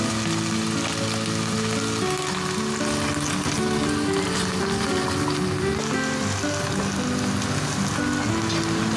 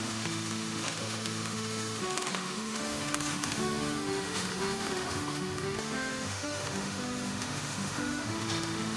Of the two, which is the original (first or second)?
first